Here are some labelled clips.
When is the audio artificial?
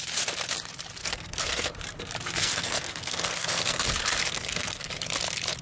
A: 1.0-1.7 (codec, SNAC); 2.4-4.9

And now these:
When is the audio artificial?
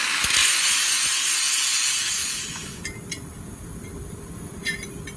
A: 0.4-1.4 (vocoder, Vocos)